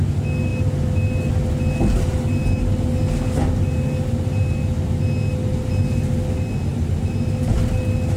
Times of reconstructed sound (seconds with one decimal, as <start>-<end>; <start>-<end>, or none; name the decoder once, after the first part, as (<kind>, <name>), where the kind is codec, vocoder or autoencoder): 6.7-7.7 (vocoder, BigVGAN v2)